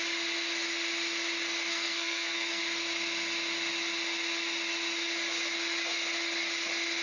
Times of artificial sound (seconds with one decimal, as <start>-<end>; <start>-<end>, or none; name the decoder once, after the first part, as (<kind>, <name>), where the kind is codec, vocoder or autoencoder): 1.7-2.6 (codec, SNAC)